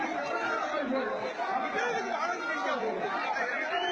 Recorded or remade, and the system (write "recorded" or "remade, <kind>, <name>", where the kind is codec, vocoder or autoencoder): recorded